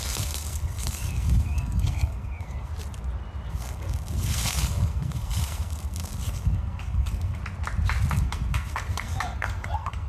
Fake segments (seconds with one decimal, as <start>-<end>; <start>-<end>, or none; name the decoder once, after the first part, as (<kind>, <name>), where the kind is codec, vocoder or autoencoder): 0.0-2.7 (codec, SNAC); 3.5-7.4; 8.1-10.1